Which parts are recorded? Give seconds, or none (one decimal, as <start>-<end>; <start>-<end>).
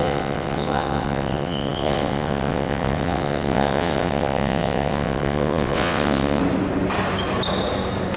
6.4-8.2